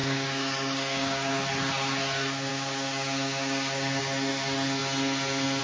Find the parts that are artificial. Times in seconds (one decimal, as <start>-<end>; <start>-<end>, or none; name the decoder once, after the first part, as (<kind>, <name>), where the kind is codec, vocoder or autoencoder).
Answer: 0.0-1.3 (codec, DAC); 2.5-4.0